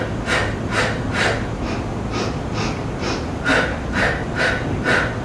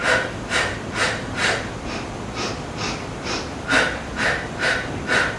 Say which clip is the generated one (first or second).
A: second